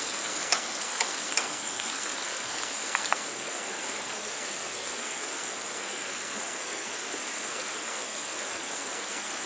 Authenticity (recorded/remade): remade